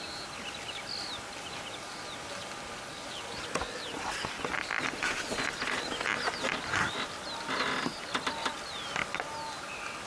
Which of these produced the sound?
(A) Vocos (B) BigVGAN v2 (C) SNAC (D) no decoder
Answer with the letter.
D